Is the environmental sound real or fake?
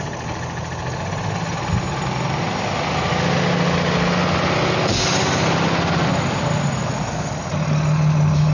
real